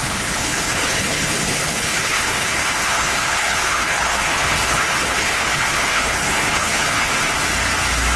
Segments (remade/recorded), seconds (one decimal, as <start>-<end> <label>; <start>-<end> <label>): 0.0-7.1 remade; 7.1-8.2 recorded